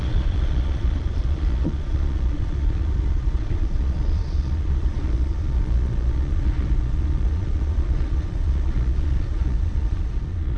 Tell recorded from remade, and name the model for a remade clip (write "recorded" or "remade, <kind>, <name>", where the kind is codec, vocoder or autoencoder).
remade, vocoder, Vocos